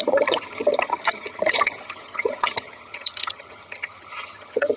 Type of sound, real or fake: fake